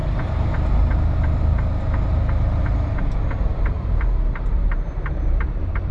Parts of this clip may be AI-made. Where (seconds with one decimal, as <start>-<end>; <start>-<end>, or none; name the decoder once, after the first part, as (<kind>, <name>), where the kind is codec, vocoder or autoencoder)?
3.5-5.9 (vocoder, BigVGAN v2)